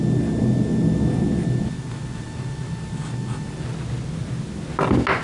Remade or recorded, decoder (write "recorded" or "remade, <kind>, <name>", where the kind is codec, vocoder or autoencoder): recorded